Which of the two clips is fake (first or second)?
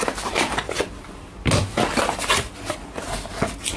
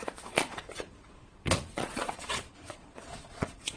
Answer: second